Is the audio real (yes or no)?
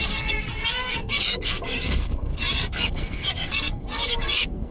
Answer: no